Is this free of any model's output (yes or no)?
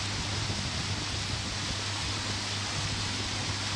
yes